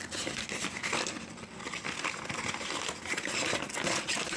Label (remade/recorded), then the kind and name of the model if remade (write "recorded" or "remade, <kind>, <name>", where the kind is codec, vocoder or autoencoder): recorded